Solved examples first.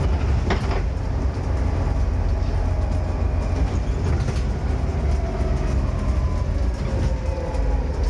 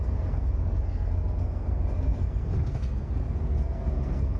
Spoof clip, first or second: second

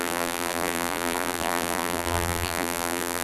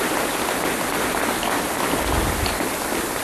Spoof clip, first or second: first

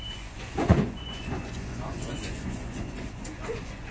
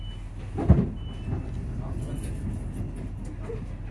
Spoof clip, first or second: first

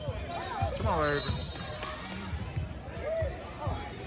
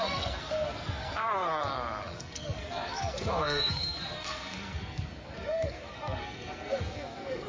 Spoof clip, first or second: second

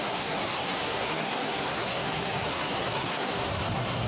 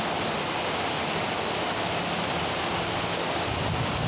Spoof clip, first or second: first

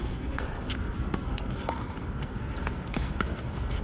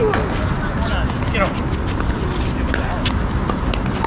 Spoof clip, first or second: first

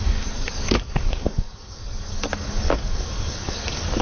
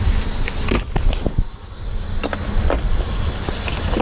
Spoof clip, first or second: first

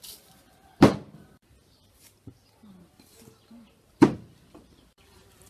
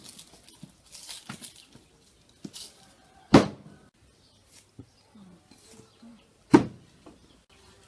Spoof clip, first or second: first